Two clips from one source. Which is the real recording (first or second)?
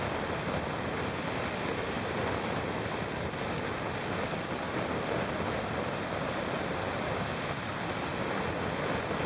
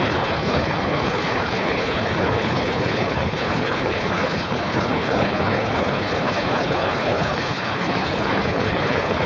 first